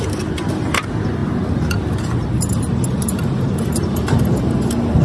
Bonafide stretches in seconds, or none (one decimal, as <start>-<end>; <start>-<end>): 0.0-5.0